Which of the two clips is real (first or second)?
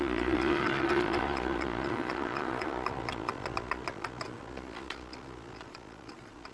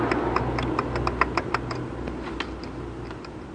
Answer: second